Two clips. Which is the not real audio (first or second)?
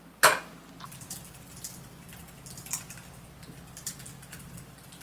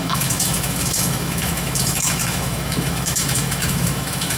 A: second